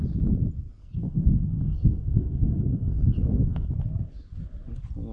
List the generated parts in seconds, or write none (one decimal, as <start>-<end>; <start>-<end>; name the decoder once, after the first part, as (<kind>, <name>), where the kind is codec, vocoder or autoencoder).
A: 0.8-3.7 (codec, SNAC)